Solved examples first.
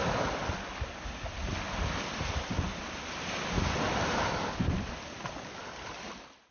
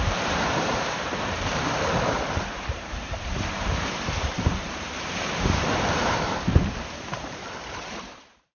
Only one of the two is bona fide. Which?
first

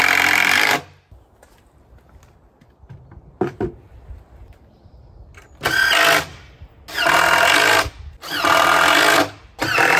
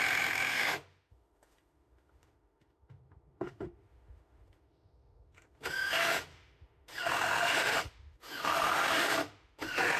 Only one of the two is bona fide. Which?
first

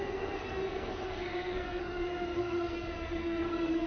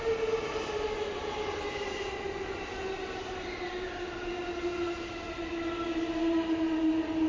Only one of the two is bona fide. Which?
second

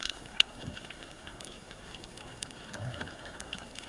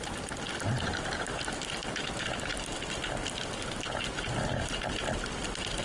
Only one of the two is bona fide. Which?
second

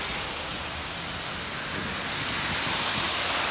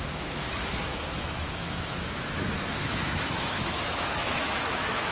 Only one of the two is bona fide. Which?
first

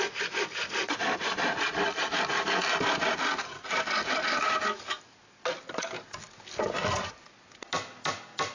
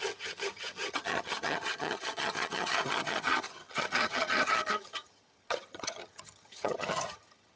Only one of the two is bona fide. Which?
first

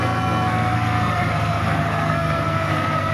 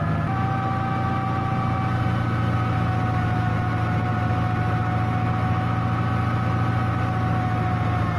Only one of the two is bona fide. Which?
second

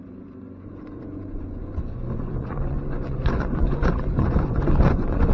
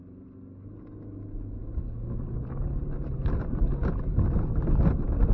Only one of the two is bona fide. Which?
second